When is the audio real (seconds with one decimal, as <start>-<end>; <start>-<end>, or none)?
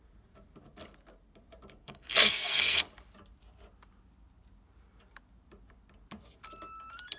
0.0-1.8; 2.8-7.2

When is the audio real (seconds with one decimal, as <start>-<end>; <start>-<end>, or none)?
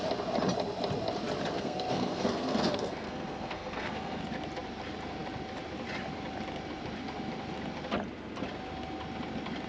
0.0-1.5; 4.2-9.7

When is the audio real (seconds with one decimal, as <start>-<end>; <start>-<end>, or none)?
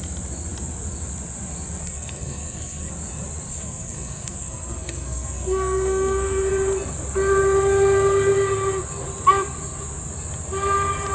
0.0-1.8; 2.9-3.5; 6.5-11.1